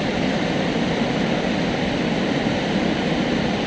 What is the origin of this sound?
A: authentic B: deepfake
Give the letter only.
A